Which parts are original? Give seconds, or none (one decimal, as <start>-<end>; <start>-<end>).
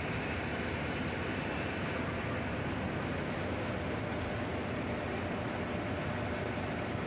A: 0.0-7.1